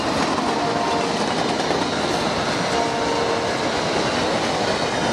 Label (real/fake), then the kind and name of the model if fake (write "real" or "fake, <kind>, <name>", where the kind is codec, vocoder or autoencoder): real